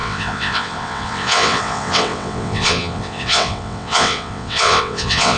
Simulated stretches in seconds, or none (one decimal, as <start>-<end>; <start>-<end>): 0.0-5.4